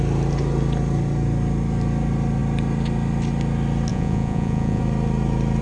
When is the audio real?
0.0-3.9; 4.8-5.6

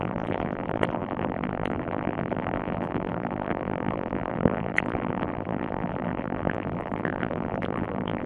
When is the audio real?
none

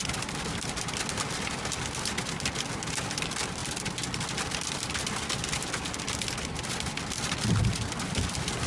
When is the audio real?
0.0-8.7

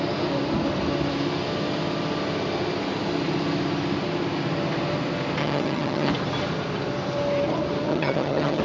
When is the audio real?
0.0-5.4; 6.1-7.9

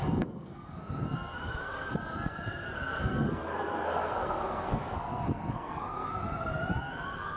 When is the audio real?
6.2-6.8

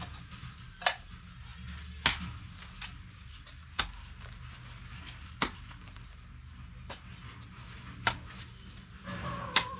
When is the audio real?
0.0-9.8

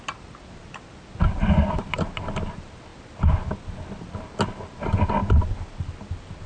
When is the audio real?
0.0-6.5